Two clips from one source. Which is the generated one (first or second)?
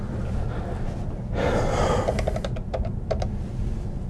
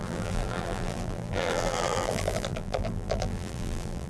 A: second